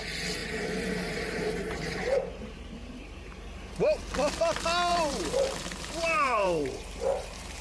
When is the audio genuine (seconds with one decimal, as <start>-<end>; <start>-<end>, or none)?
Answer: 0.0-0.4; 4.0-4.9

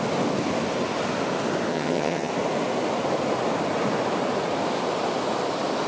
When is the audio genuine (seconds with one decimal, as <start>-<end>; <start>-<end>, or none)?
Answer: 0.0-1.7; 2.3-5.9

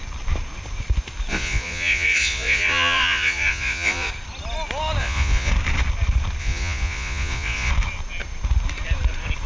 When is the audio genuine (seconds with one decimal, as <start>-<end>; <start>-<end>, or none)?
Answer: 0.0-1.3; 4.1-5.0; 5.5-6.4; 7.7-9.5

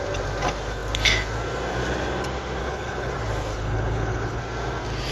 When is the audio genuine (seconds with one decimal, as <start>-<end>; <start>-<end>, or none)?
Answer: 0.0-2.6; 3.1-3.5; 4.4-5.1